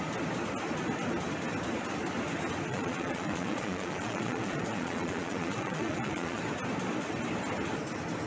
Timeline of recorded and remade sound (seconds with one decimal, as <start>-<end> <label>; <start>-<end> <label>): 0.0-2.7 recorded; 2.7-6.4 remade; 6.4-8.3 recorded